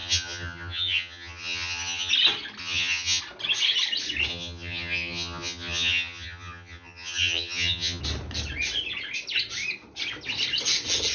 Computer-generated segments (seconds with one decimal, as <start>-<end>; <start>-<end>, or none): 0.0-2.1; 2.6-3.2; 4.3-8.0

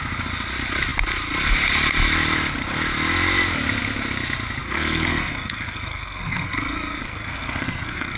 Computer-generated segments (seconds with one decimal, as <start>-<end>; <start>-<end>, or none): 4.6-8.2

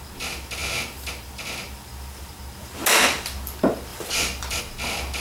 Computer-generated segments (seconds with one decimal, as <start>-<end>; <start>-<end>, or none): 3.9-4.6

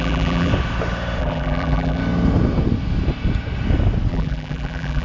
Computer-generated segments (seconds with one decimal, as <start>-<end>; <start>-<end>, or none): 0.0-0.5; 1.2-2.0; 4.1-5.0

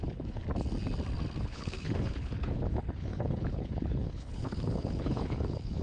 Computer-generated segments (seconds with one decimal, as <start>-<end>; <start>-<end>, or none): 0.0-0.4; 1.4-5.8

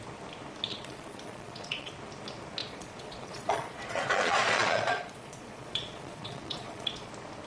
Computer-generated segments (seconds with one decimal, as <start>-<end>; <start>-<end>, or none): 0.7-1.9; 2.6-7.1

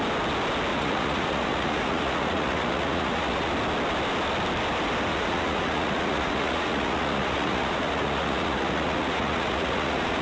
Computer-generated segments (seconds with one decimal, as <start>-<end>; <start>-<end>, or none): 0.7-3.5; 5.1-10.2